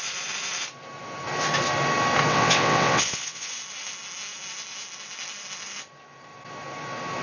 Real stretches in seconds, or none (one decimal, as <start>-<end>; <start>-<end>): 0.0-2.3; 3.5-7.2